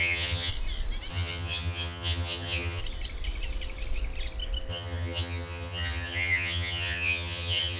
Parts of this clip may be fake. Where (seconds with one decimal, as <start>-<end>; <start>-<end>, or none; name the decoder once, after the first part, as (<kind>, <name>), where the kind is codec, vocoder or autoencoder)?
0.0-0.5 (vocoder, HiFi-GAN); 1.1-2.8; 4.7-7.8